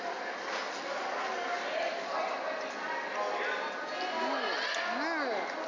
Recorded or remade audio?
recorded